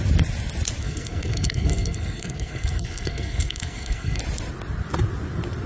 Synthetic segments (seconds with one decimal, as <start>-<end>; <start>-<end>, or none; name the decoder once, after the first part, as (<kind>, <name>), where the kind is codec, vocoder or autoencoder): 0.8-4.2 (codec, SNAC)